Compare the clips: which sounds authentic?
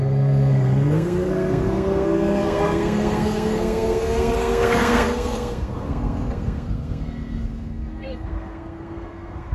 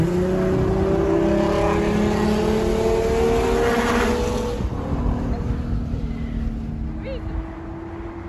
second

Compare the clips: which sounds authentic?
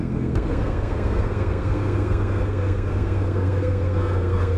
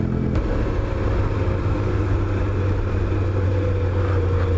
second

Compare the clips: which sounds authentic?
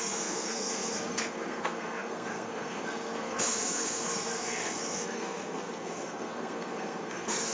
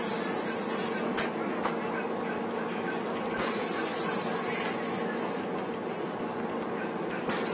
second